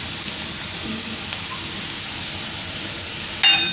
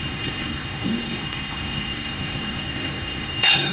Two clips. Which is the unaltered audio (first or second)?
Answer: first